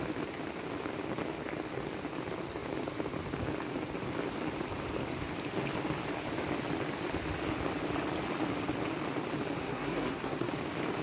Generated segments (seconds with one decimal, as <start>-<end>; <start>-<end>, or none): 9.6-10.5